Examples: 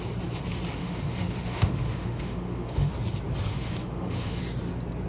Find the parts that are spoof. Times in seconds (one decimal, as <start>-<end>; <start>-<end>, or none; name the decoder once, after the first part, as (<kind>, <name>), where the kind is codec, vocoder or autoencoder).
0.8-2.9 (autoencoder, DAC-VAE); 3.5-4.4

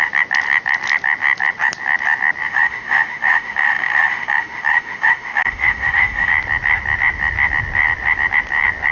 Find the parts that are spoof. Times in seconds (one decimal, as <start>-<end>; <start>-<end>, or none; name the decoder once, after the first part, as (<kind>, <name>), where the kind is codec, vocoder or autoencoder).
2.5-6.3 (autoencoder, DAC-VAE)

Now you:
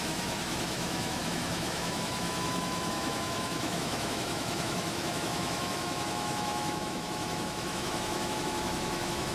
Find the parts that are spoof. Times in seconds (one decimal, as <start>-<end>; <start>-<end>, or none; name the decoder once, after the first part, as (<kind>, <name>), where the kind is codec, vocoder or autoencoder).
0.0-9.3 (autoencoder, DAC-VAE)

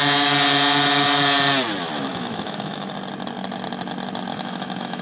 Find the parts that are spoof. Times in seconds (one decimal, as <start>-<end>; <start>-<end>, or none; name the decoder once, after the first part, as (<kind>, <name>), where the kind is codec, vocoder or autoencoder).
2.1-2.9 (autoencoder, DAC-VAE); 4.3-5.0

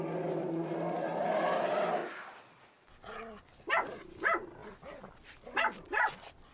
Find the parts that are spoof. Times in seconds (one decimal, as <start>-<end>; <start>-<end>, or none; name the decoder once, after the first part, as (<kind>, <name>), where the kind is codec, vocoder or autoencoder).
none

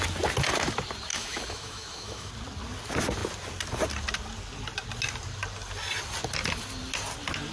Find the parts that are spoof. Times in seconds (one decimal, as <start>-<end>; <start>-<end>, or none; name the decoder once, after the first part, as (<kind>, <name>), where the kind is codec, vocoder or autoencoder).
1.1-2.3 (autoencoder, DAC-VAE)

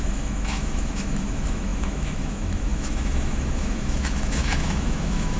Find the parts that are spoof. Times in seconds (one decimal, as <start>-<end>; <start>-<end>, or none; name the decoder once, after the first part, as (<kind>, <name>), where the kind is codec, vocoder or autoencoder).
0.0-5.4 (autoencoder, DAC-VAE)

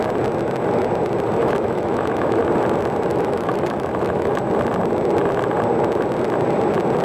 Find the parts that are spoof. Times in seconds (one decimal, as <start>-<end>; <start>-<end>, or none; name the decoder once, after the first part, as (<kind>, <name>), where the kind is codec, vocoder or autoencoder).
1.4-2.4 (autoencoder, DAC-VAE); 3.1-4.4